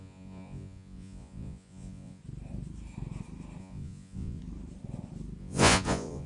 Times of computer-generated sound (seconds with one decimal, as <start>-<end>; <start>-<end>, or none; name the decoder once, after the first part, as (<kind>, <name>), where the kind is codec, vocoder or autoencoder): 0.0-2.2 (vocoder, Vocos); 3.6-4.4; 5.4-6.3